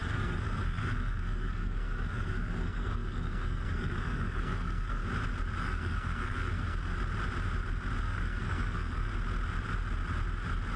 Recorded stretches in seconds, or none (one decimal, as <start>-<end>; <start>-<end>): 5.0-5.6; 6.9-8.0; 9.1-10.8